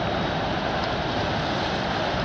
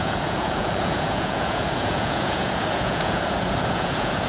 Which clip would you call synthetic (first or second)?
second